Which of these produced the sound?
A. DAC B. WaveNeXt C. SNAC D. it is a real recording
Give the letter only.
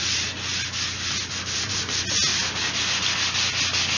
D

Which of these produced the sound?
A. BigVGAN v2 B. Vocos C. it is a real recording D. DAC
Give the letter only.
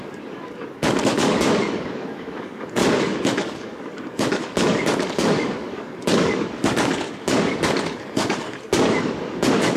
D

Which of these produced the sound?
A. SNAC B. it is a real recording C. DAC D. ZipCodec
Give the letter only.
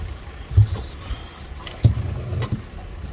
B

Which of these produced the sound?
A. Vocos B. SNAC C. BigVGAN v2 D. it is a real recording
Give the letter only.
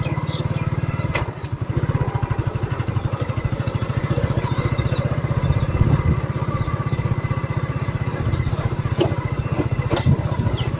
C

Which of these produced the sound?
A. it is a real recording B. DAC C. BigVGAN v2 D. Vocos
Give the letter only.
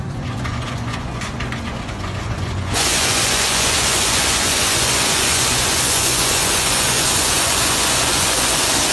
D